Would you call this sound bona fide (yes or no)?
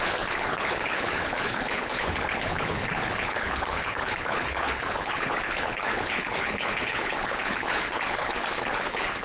no